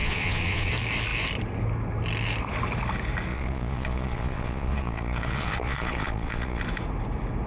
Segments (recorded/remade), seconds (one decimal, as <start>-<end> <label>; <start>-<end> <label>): 0.0-0.7 remade; 0.7-3.3 recorded; 3.3-6.6 remade; 6.6-7.5 recorded